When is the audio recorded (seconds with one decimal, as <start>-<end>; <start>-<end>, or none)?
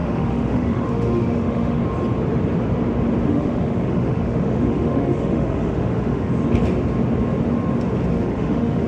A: 1.8-3.3; 6.3-8.1